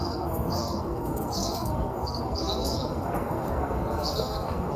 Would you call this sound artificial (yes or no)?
yes